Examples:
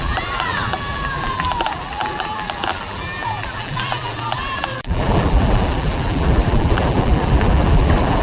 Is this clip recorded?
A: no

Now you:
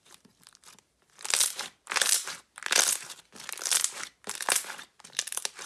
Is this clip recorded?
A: no